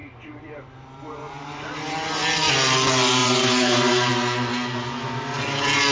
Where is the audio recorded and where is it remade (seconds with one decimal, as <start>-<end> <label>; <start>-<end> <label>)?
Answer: 0.0-2.5 remade; 2.5-3.2 recorded; 3.2-4.1 remade; 4.1-5.9 recorded